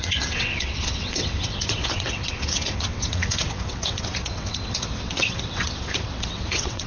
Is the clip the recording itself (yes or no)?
no